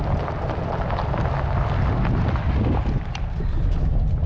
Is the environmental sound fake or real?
real